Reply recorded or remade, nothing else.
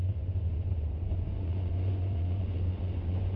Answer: remade